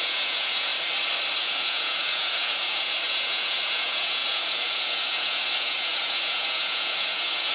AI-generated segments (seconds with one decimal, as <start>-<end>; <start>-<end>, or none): 0.0-0.7; 1.4-7.5